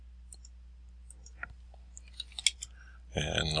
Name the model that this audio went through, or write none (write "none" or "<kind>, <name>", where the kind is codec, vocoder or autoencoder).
none